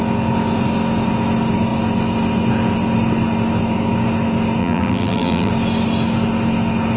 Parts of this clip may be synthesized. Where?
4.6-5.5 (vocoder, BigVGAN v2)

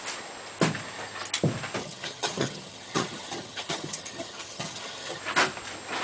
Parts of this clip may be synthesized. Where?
1.8-5.2 (vocoder, HiFi-GAN)

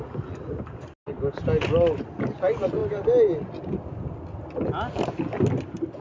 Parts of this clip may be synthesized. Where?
none

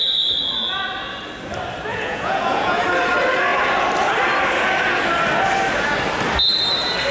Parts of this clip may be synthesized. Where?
1.9-2.8 (vocoder, Vocos)